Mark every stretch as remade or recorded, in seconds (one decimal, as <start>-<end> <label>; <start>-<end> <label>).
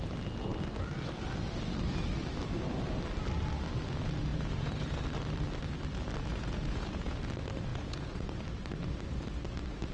0.0-4.3 recorded; 4.3-5.0 remade; 5.0-6.3 recorded; 6.3-7.2 remade; 7.2-7.7 recorded; 7.7-8.4 remade; 8.4-9.9 recorded